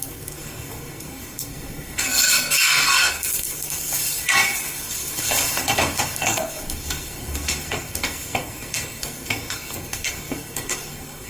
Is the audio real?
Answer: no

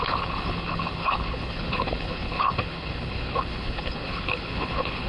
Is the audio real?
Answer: no